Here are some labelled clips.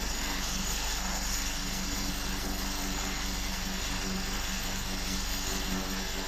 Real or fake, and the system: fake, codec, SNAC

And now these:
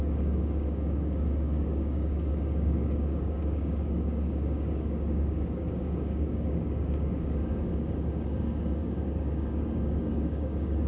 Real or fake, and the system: fake, codec, DAC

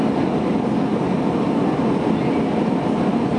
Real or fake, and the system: real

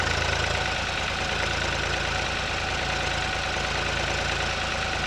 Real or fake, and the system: real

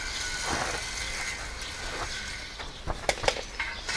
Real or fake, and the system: real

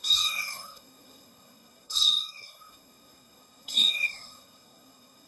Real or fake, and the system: fake, codec, SNAC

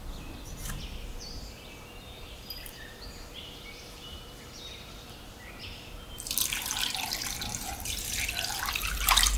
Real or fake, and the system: fake, vocoder, BigVGAN v2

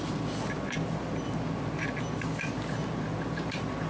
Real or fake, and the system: real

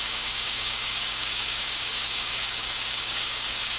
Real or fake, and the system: fake, codec, DAC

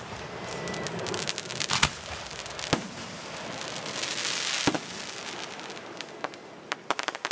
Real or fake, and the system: real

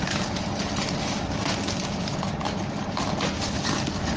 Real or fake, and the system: real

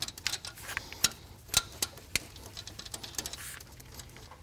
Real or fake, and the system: real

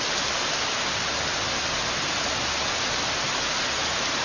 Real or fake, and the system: real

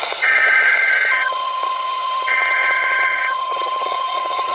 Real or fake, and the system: fake, vocoder, HiFi-GAN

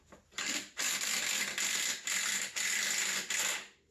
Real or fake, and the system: real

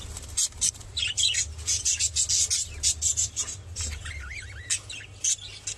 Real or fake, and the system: real